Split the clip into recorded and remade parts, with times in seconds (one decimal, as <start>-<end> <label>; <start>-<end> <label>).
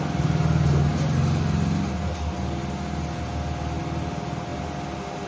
0.0-5.3 recorded